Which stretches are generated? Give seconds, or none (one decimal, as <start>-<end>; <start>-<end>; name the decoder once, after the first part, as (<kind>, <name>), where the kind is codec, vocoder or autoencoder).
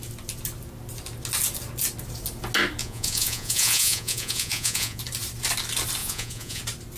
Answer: 2.8-5.0 (vocoder, Vocos); 6.0-6.6